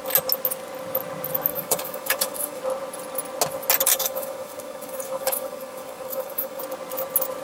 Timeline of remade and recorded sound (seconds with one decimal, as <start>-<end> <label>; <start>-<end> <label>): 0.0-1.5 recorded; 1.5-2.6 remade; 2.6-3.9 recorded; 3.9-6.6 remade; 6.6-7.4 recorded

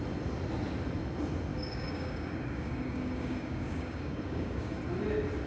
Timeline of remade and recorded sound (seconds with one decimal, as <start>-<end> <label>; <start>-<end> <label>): 0.0-1.5 recorded; 1.5-4.8 remade; 4.8-5.5 recorded

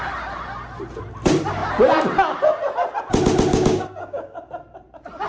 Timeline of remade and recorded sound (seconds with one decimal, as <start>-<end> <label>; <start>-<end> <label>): 0.0-3.5 recorded; 3.5-4.5 remade; 4.5-5.3 recorded

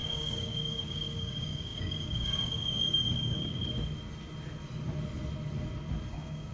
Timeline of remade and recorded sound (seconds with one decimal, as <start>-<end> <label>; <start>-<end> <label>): 0.0-3.6 remade; 3.6-6.1 recorded; 6.1-6.5 remade

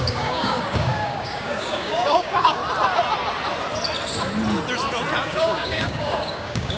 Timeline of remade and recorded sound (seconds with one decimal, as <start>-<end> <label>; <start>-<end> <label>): 0.0-2.6 remade; 2.6-5.2 recorded; 5.2-6.8 remade